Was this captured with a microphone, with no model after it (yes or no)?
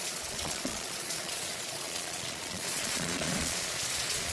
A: no